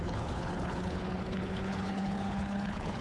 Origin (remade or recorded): remade